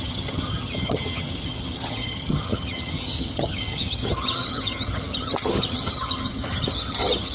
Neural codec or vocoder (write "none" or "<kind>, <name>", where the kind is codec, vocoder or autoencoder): vocoder, HiFi-GAN